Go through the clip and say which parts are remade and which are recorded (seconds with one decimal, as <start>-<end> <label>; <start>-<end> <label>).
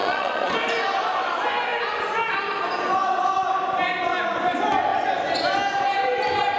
0.0-0.5 remade; 0.5-6.6 recorded